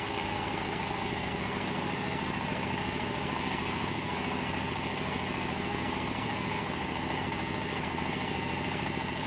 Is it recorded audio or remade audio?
remade